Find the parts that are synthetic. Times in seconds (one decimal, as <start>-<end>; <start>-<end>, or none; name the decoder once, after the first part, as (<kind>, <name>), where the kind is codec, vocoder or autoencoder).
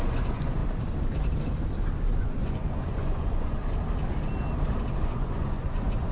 0.0-0.6 (vocoder, Vocos); 2.2-3.6; 5.0-6.1